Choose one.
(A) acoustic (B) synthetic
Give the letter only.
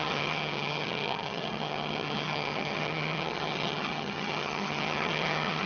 B